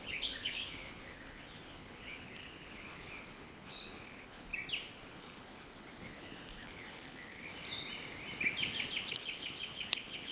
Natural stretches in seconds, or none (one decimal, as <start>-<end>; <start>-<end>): 4.5-5.1; 7.5-9.1